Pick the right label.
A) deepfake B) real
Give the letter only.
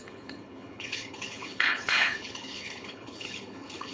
A